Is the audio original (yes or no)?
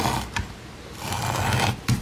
yes